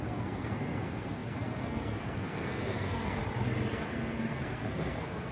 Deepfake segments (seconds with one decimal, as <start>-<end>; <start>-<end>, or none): 0.0-3.2; 3.7-5.3